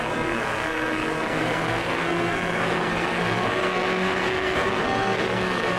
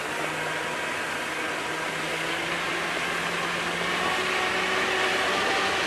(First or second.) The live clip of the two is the second